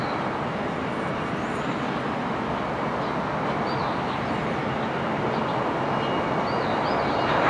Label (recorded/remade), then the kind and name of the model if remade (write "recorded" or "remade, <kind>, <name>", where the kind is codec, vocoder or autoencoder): recorded